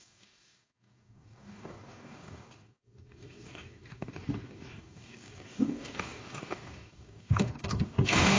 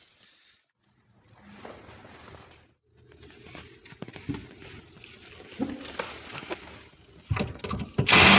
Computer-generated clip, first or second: first